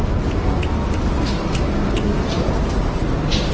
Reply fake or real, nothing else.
real